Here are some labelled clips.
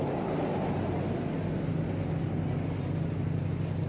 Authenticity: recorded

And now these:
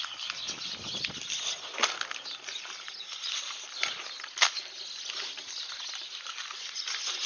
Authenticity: recorded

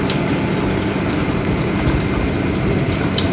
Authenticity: remade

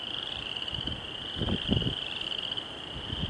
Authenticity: recorded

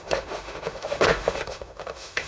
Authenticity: remade